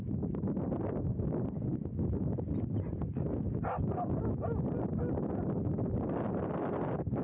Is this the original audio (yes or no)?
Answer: yes